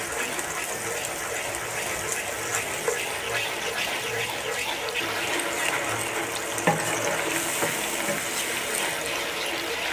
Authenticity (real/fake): real